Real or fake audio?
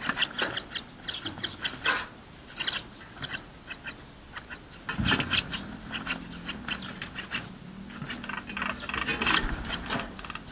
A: real